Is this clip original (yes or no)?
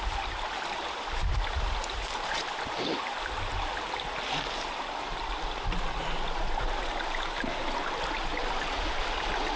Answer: yes